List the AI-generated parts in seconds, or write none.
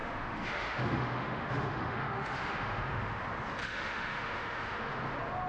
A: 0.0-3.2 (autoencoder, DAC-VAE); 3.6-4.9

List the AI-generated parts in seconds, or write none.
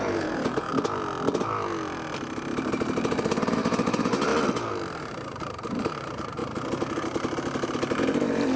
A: 0.0-0.7 (vocoder, BigVGAN v2); 2.7-4.3; 5.0-6.4; 8.0-8.6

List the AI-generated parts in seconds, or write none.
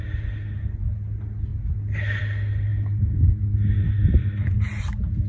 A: none